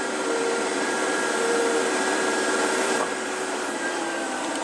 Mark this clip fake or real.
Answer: fake